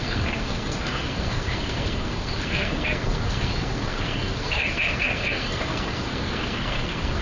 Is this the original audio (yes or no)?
no